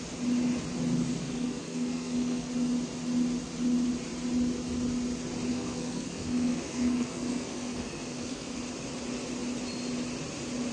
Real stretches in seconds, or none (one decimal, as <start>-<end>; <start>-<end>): 0.0-1.2; 2.5-5.5; 8.6-10.7